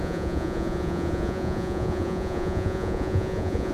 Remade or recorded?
remade